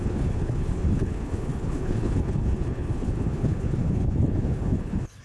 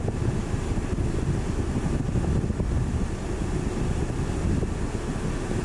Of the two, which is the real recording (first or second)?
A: second